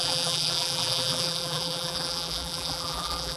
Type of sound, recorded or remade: remade